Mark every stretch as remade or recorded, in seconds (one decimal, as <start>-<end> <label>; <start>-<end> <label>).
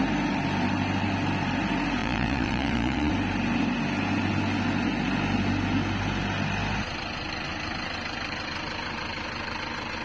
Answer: 0.0-2.0 recorded; 2.0-3.1 remade; 3.1-10.0 recorded